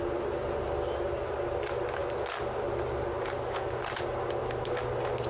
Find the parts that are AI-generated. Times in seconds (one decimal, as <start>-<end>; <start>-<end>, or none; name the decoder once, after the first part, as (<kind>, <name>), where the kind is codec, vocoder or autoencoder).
none